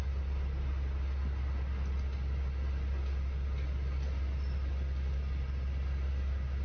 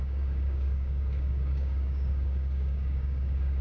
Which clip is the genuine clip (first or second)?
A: first